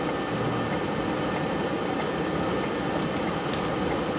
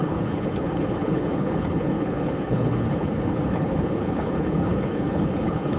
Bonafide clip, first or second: first